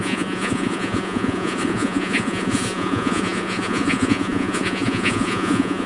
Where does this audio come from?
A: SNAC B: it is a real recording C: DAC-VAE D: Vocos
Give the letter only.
D